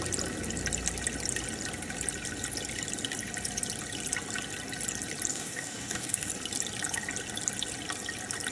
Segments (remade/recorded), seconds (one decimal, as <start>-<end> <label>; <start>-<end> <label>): 0.0-5.3 recorded; 5.3-6.3 remade; 6.3-8.5 recorded